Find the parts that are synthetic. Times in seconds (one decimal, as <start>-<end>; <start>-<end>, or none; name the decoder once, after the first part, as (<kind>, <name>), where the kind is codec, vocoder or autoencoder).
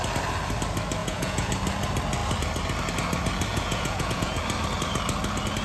1.0-1.5 (vocoder, Vocos); 3.5-4.4